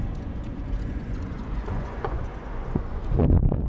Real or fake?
fake